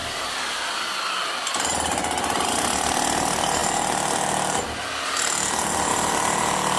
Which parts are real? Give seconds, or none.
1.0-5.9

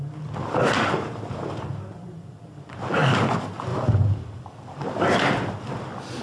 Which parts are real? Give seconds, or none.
0.0-3.7; 5.8-6.2

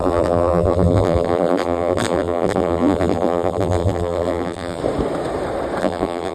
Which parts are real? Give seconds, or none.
4.8-5.8